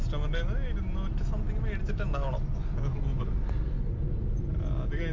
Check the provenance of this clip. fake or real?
real